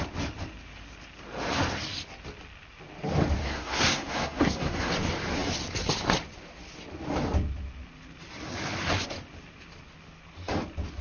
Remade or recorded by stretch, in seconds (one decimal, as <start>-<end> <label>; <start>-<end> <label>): 0.0-3.4 recorded; 3.4-4.9 remade; 4.9-11.0 recorded